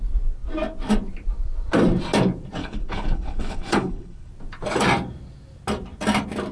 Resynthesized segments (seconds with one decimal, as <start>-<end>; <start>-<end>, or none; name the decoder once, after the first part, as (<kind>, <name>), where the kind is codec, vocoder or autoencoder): 2.6-4.3 (codec, HILCodec)